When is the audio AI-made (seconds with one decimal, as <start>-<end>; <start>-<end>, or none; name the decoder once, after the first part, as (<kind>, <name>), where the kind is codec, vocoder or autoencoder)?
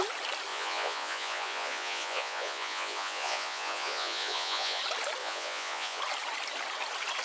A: 0.5-4.8 (vocoder, Vocos); 5.2-6.0